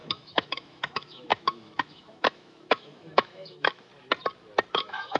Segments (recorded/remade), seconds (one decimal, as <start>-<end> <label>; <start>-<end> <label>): 0.0-3.9 remade; 3.9-4.7 recorded; 4.7-5.2 remade